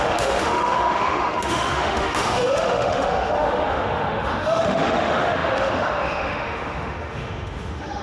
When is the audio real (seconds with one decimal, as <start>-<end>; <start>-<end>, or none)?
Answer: none